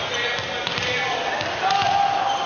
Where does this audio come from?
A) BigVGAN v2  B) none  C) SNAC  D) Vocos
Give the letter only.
B